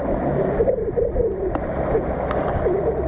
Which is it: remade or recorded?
recorded